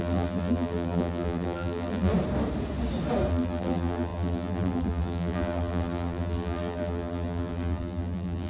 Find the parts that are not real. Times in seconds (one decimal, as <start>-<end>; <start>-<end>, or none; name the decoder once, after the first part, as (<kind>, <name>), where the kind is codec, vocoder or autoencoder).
0.0-2.1 (vocoder, BigVGAN v2); 3.3-8.5